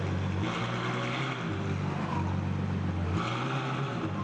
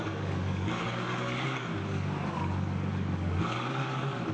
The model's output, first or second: second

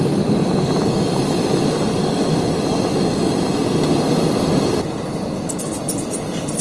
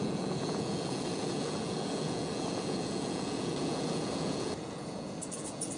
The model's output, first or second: second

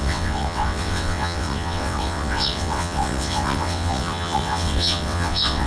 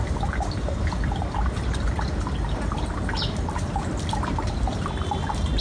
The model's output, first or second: first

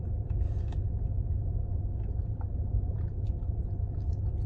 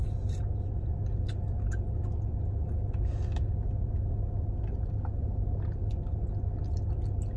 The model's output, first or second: first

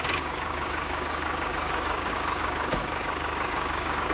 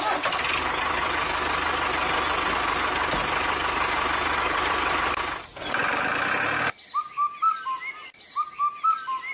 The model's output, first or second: first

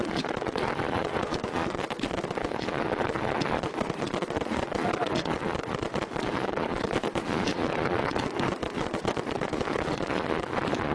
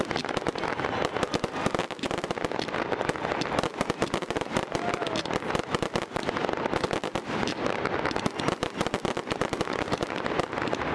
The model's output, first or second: first